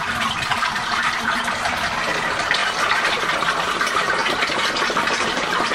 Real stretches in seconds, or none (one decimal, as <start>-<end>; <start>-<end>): 2.6-3.8; 4.2-4.9